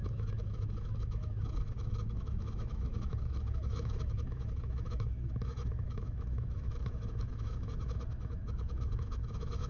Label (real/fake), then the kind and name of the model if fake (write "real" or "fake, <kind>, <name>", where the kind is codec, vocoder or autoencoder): fake, autoencoder, DAC-VAE